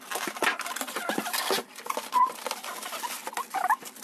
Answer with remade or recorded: recorded